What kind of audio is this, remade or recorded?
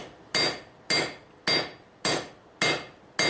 recorded